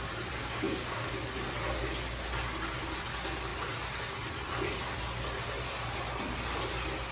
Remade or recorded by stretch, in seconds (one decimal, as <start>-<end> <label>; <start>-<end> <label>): 0.0-0.4 recorded; 0.4-1.1 remade; 1.1-7.1 recorded